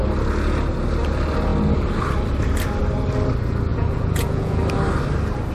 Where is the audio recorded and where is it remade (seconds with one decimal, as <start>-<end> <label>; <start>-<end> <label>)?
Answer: 0.0-3.7 recorded; 3.7-4.6 remade; 4.6-5.5 recorded